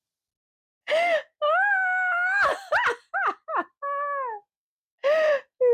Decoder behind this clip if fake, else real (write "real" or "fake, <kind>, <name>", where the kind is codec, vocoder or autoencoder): real